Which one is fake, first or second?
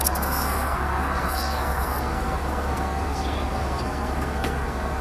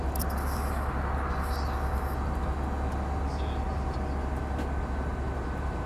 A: first